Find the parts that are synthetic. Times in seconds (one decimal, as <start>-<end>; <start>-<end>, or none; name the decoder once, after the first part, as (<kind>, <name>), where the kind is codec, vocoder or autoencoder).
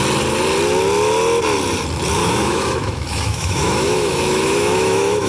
2.2-5.3 (autoencoder, DAC-VAE)